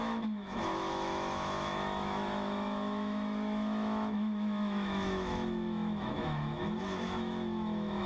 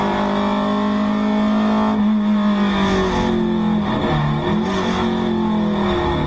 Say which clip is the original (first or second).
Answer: second